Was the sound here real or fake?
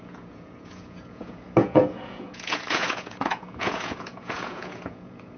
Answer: fake